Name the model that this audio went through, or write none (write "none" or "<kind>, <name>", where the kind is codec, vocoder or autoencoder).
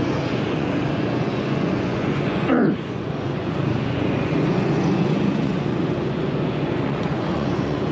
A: vocoder, Vocos